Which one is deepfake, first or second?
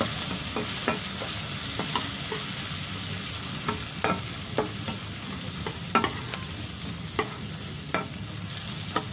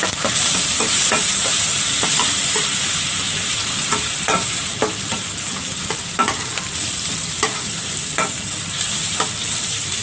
second